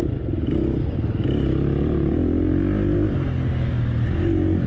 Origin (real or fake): real